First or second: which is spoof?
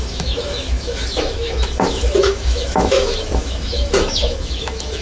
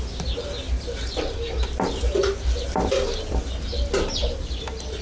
first